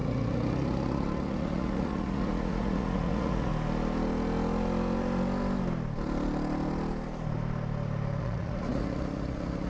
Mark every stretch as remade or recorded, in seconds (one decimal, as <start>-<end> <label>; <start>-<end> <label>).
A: 0.0-3.5 remade; 3.5-8.2 recorded; 8.2-9.7 remade